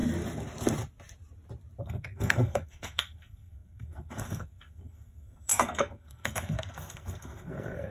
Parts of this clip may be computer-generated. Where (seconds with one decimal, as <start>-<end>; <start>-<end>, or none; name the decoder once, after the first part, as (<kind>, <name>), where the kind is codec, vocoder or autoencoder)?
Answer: 1.8-7.9 (codec, SNAC)